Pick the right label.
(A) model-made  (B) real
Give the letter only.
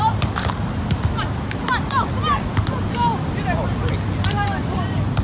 B